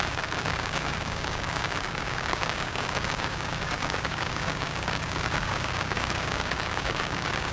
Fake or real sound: fake